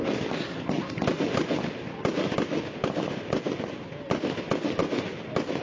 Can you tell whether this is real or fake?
real